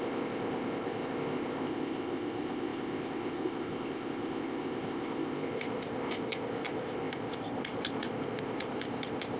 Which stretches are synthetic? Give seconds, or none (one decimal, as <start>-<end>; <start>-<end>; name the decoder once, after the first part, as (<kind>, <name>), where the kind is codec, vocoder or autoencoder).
0.0-9.4 (codec, ZipCodec)

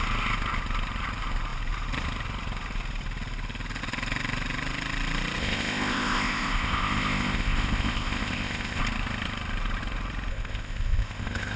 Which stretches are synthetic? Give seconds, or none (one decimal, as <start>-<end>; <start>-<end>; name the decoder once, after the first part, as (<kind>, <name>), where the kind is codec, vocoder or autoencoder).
5.4-8.8 (codec, ZipCodec); 10.3-11.6

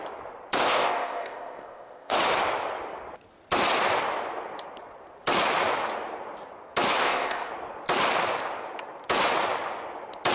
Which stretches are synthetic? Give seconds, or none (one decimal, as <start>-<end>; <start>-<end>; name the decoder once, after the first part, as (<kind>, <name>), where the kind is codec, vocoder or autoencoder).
0.6-2.2 (codec, ZipCodec); 7.0-7.5

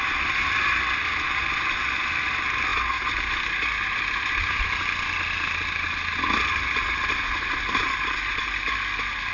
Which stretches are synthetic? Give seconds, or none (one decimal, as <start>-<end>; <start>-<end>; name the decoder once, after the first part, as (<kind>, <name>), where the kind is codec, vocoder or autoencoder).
none

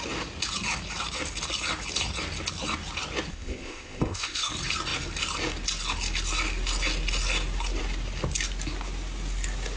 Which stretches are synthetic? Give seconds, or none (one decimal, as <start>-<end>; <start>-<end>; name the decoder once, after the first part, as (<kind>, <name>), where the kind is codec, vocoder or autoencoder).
3.3-4.5 (codec, ZipCodec)